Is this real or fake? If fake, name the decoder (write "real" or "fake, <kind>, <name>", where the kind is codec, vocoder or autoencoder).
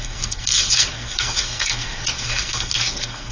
fake, codec, SNAC